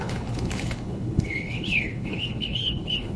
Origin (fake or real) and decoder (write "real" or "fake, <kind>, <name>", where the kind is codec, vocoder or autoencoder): fake, codec, HILCodec